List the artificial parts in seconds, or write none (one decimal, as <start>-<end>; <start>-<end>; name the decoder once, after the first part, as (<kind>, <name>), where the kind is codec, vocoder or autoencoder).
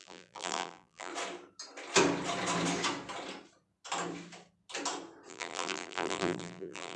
0.0-1.1 (vocoder, BigVGAN v2); 5.3-7.0